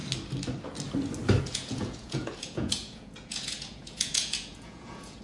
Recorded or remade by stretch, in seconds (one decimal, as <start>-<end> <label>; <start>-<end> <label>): 0.0-1.4 recorded; 1.4-5.2 remade